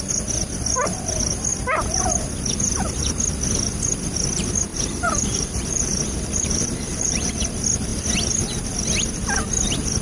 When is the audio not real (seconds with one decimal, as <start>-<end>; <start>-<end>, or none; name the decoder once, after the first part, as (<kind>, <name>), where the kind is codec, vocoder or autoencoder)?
4.7-7.5 (vocoder, BigVGAN v2)